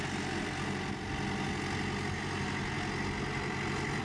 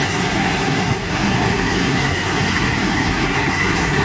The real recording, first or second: first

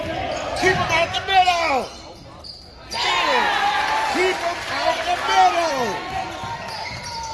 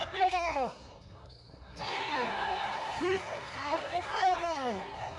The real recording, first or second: first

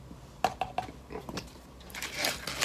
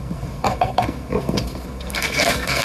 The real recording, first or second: first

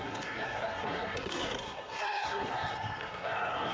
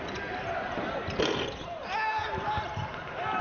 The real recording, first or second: second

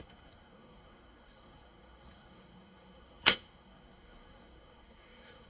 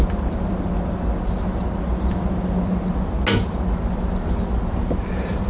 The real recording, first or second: second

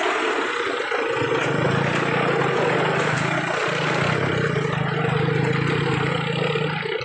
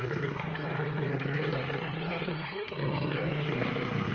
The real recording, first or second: first